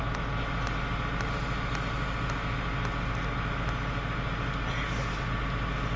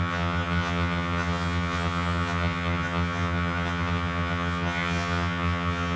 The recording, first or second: first